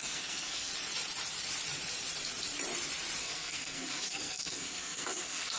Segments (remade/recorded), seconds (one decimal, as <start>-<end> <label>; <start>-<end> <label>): 0.0-0.7 remade; 0.7-3.2 recorded; 3.2-5.6 remade